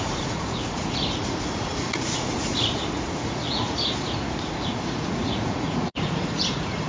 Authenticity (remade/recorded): remade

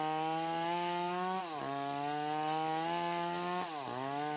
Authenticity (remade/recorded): recorded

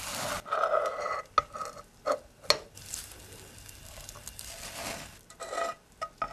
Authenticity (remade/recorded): recorded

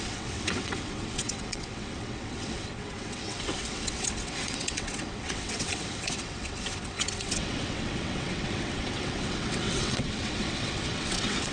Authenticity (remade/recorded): remade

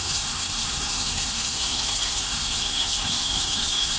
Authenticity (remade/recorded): remade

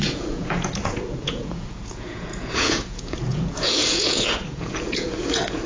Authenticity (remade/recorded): remade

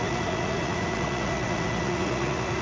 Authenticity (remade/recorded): remade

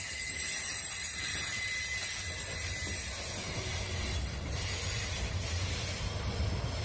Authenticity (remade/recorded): recorded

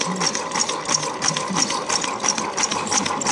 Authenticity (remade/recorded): recorded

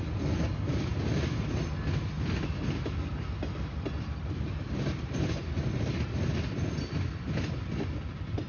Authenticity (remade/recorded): recorded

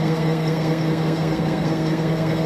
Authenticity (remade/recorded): remade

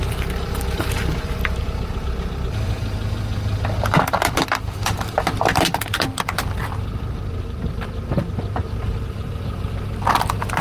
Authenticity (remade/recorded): remade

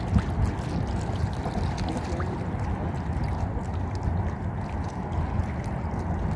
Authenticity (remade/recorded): recorded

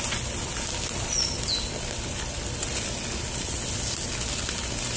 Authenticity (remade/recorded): recorded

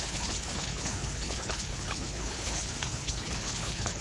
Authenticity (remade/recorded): remade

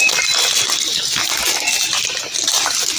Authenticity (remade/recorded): recorded